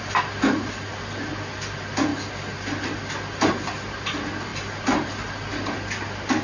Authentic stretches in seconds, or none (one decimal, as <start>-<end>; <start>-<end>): 0.0-6.4